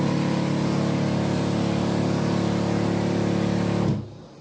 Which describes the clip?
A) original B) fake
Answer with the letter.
A